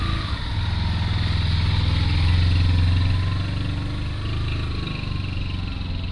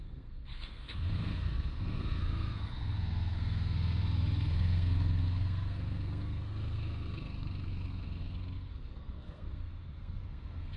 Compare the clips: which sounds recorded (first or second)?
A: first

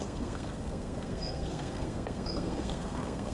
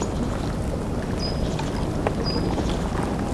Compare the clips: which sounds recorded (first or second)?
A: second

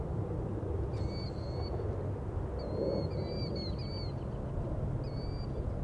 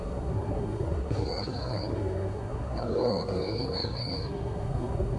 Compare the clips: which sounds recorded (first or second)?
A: first